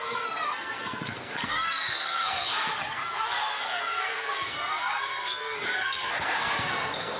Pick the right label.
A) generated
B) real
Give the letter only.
A